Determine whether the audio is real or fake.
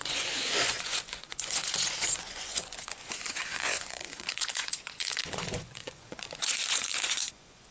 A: fake